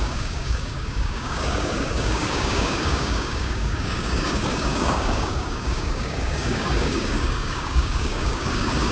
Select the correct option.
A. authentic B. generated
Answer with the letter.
B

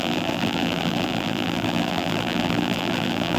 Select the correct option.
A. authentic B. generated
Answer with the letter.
B